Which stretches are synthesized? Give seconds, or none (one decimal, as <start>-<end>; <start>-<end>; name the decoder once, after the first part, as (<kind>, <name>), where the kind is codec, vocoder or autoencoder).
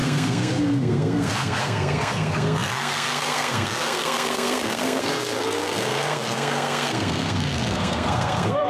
0.0-8.7 (codec, SNAC)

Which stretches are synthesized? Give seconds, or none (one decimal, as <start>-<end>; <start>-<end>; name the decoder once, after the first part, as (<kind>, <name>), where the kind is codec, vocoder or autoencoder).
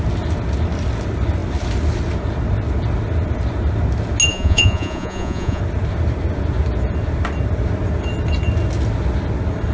4.3-5.6 (vocoder, Vocos)